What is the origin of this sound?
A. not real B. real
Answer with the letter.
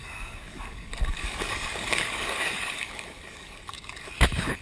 A